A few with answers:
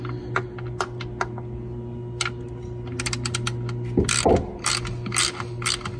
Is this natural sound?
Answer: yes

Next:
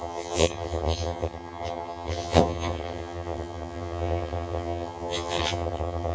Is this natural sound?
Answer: no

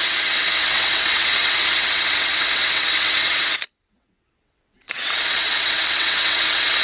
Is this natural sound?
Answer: no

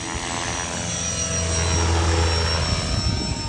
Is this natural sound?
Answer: yes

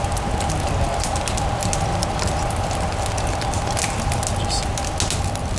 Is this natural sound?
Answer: yes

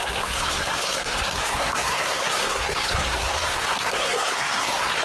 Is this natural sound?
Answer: no